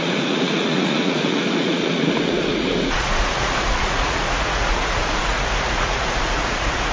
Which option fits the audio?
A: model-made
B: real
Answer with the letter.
A